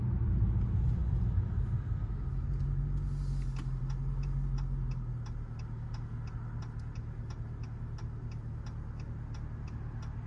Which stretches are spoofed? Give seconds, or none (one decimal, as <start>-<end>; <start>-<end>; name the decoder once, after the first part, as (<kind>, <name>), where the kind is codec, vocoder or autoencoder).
none